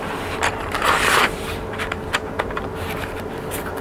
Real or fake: fake